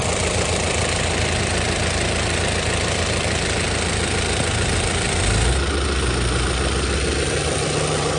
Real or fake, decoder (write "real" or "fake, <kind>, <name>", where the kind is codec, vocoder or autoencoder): real